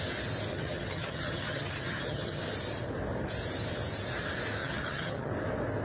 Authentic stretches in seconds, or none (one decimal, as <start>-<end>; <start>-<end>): 0.0-0.5; 2.4-4.6; 5.3-5.8